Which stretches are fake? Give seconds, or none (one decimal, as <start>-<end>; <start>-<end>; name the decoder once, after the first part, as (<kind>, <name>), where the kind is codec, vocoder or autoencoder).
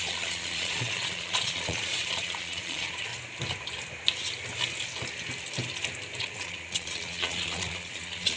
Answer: 0.0-3.1 (vocoder, Vocos); 6.2-8.4